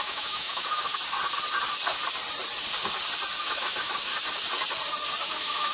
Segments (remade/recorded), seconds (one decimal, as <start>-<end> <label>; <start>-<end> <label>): 0.0-0.9 remade; 0.9-3.4 recorded; 3.4-4.1 remade; 4.1-5.2 recorded; 5.2-5.7 remade